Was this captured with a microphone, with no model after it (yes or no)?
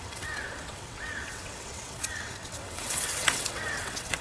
no